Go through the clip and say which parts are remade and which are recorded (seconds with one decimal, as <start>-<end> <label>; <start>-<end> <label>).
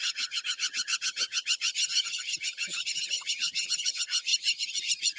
0.0-4.3 remade; 4.3-5.2 recorded